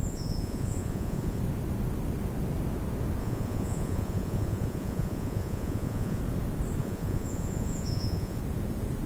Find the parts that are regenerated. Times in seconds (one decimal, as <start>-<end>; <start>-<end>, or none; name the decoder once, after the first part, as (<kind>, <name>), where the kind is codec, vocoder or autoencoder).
0.0-1.4 (vocoder, Vocos); 3.2-6.2; 6.8-8.4